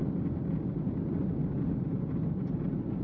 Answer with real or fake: real